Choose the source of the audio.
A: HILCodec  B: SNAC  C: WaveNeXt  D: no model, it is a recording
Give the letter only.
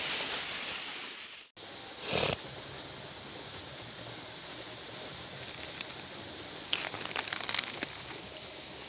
D